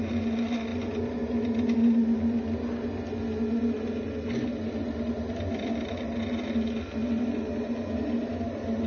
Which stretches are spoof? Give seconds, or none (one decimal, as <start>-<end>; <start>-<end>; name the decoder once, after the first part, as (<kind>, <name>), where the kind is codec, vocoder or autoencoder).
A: none